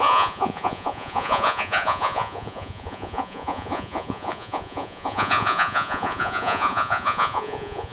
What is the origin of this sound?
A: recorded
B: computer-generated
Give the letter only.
B